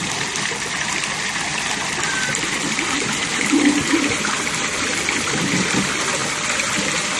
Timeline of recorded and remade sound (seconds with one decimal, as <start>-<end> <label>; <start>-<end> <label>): 0.0-7.2 recorded